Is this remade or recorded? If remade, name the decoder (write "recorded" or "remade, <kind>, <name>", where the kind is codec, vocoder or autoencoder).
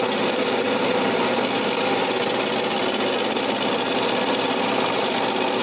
recorded